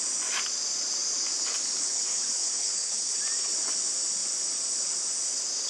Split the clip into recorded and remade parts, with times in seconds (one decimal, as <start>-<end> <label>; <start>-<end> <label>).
0.0-1.8 recorded; 1.8-3.2 remade; 3.2-5.7 recorded